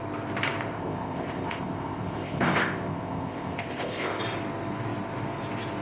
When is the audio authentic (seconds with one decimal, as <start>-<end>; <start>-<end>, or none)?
0.0-0.7; 4.2-5.8